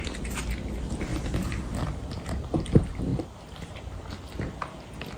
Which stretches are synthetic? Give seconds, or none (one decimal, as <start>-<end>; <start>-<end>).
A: 1.1-1.8; 3.1-4.1